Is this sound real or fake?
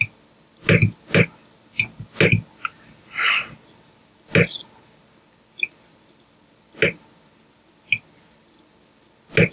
real